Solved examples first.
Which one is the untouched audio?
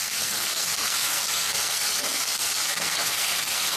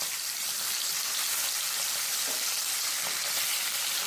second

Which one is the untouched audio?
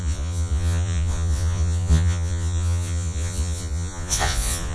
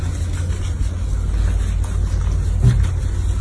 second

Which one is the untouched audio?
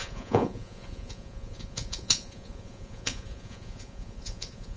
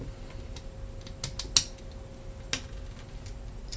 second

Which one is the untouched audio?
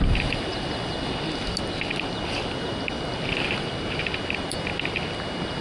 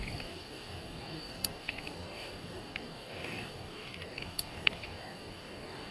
first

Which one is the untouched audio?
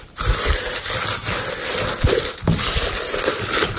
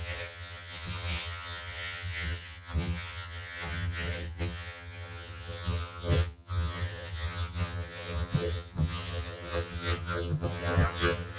first